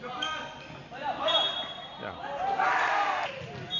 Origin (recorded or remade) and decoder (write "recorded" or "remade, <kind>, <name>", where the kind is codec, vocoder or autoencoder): recorded